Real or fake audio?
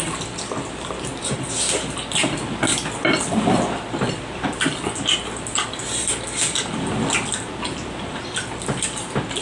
real